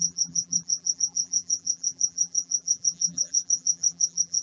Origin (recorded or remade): remade